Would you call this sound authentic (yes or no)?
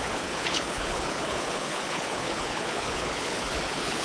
no